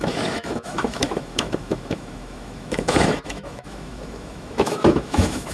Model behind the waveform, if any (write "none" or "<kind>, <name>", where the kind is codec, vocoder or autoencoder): autoencoder, DAC-VAE